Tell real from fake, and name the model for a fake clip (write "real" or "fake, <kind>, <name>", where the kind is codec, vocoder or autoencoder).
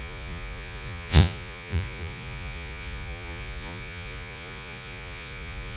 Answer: fake, vocoder, Vocos